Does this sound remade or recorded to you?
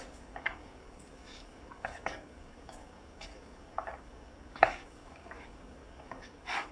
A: remade